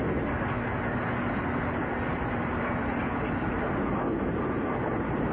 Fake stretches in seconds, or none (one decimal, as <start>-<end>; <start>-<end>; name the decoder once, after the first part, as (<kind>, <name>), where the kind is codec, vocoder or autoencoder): 2.1-2.7 (vocoder, BigVGAN v2)